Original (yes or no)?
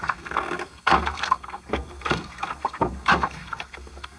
no